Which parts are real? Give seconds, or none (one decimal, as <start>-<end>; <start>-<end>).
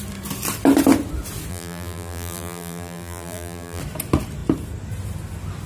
0.0-1.5; 3.8-5.7